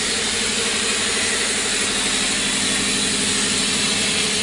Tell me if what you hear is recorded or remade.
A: recorded